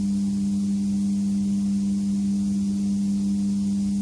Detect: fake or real real